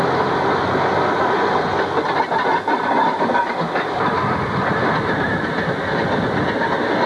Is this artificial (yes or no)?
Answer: no